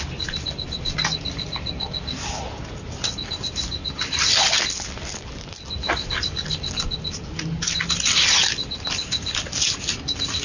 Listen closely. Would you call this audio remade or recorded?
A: recorded